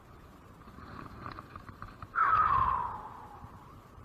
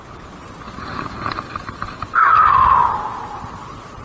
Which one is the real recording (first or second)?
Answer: second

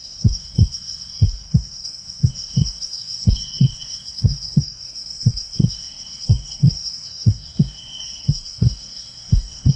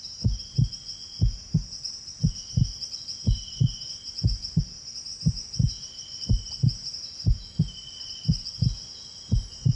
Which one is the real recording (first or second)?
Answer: second